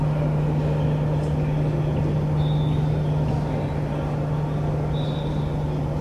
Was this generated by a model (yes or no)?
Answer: no